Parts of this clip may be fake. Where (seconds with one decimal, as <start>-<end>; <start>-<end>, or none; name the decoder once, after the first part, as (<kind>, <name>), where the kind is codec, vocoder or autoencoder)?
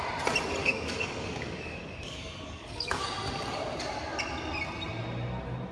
0.6-3.0 (codec, DAC)